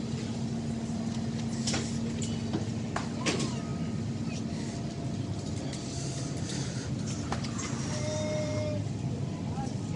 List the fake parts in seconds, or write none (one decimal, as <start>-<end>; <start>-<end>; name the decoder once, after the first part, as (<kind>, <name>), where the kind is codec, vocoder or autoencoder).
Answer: none